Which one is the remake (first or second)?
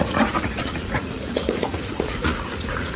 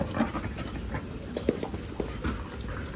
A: first